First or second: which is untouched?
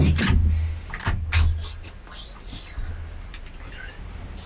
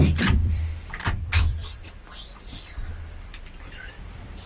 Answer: first